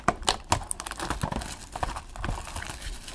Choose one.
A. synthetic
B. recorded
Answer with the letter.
B